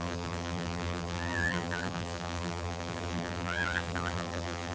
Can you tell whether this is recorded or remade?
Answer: remade